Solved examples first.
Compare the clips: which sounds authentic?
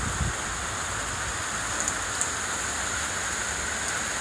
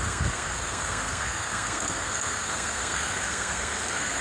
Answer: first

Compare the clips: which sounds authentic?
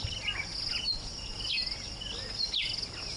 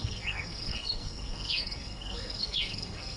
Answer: first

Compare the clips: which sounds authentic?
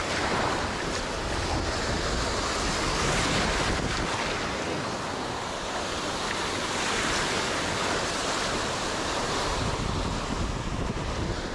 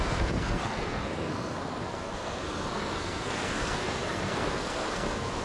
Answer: first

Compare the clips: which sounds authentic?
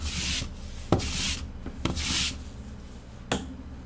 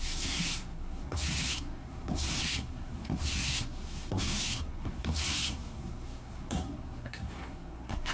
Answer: first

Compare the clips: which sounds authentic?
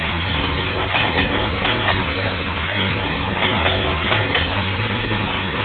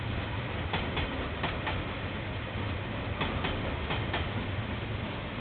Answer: second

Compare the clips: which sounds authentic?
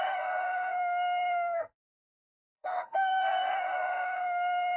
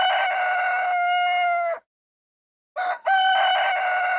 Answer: second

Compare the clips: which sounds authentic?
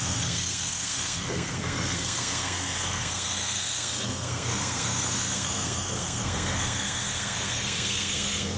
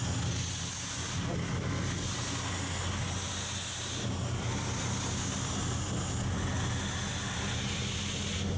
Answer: second